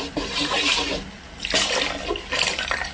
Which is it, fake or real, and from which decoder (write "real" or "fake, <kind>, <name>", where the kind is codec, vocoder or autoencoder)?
real